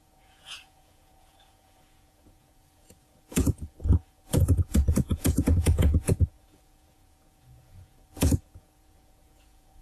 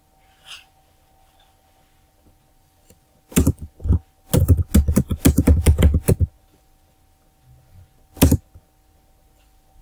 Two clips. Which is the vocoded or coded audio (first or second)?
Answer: first